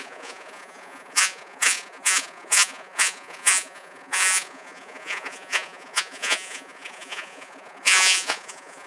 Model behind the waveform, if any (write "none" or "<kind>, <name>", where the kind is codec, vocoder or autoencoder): vocoder, Vocos